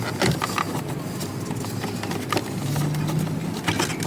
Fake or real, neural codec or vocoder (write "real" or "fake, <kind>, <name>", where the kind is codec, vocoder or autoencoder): real